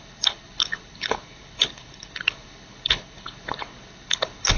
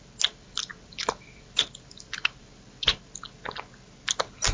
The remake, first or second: first